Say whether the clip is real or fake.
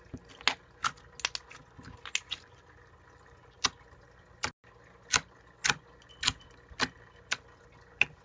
real